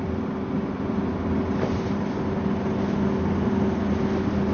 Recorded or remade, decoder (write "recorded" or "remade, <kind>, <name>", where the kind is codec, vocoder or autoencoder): recorded